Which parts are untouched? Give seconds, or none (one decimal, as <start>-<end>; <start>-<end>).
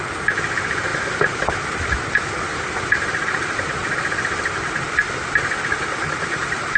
0.0-6.8